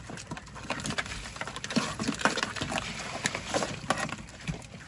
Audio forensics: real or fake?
real